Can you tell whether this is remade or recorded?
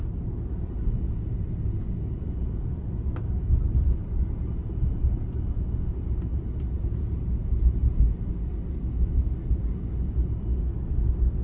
recorded